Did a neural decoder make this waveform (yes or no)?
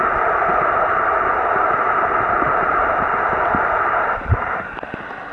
no